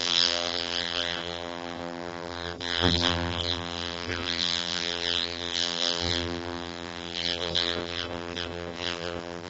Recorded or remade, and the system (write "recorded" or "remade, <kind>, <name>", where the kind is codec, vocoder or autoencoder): remade, vocoder, BigVGAN v2